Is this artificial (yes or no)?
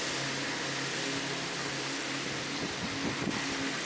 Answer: no